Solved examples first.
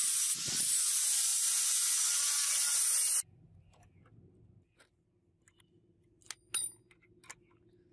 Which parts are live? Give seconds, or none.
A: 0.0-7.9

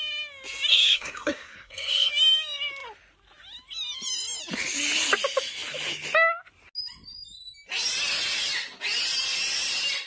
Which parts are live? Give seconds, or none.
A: 0.0-0.7; 2.1-10.1

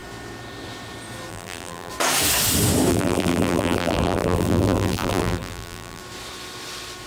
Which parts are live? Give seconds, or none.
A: 0.0-1.3; 1.9-2.9; 6.0-7.1

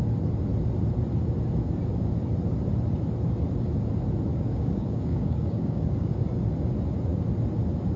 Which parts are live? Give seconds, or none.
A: 0.0-4.3; 6.2-8.0

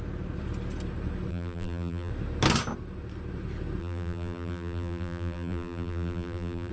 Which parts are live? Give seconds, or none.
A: 0.0-1.3; 2.1-3.8

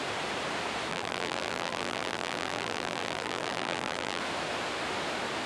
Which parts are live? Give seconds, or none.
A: 0.0-0.9; 4.2-5.5

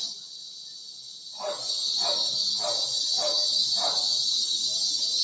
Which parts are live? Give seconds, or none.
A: 0.0-5.2